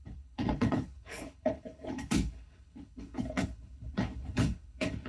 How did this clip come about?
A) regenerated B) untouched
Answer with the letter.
A